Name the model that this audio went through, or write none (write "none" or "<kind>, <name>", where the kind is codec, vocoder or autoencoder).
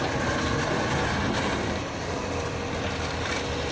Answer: none